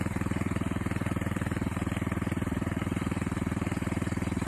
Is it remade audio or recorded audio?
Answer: remade